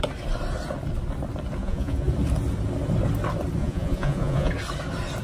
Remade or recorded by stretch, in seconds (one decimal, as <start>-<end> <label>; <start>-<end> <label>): 0.0-1.6 recorded; 1.6-2.1 remade; 2.1-3.6 recorded; 3.6-4.5 remade; 4.5-5.2 recorded